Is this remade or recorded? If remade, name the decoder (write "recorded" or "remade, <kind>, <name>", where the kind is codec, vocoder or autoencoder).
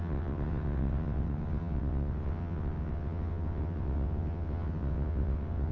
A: remade, vocoder, WaveNeXt